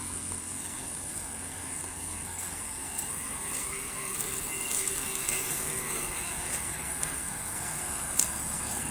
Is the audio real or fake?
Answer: fake